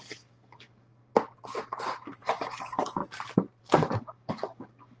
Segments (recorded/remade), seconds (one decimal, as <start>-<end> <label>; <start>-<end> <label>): 0.0-1.1 remade; 1.1-2.2 recorded; 2.2-3.0 remade; 3.0-3.6 recorded; 3.6-5.0 remade